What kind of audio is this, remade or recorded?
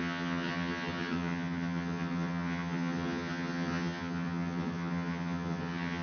remade